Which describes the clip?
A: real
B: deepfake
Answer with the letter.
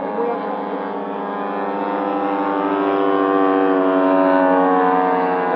A